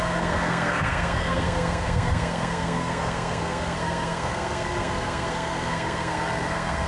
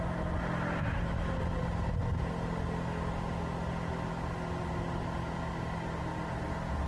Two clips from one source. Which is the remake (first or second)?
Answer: first